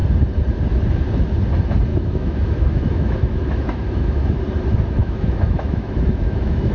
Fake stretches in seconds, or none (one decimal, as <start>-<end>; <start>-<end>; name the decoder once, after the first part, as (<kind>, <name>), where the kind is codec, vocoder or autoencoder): 1.9-4.4 (autoencoder, DAC-VAE); 5.0-6.7